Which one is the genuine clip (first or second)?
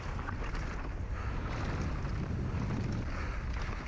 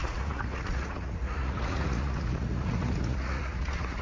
first